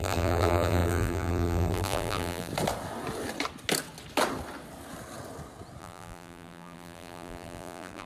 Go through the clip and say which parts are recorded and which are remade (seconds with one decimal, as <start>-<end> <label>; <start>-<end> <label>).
0.0-2.5 remade; 2.5-5.8 recorded; 5.8-8.1 remade